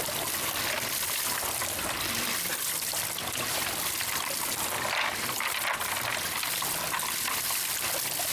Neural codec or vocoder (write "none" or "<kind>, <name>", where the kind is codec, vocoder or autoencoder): none